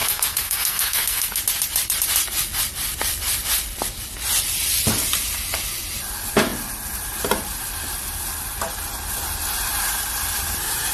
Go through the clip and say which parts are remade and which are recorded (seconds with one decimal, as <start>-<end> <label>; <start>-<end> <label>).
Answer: 0.0-1.4 remade; 1.4-10.9 recorded